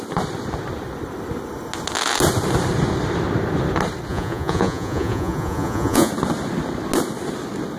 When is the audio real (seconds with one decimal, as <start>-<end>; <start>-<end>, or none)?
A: 0.0-4.1; 6.1-7.8